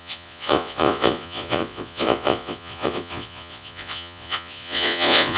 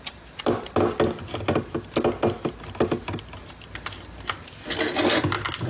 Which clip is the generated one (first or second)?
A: first